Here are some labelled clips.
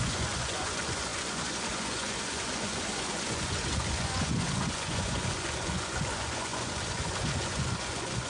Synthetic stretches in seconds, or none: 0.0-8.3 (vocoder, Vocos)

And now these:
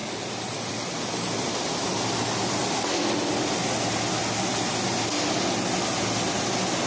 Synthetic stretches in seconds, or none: 0.0-2.6 (vocoder, BigVGAN v2)

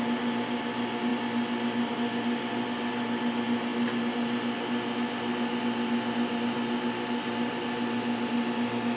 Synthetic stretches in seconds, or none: none